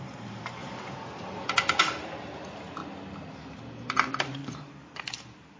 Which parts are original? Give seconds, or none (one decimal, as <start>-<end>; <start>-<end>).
2.8-3.8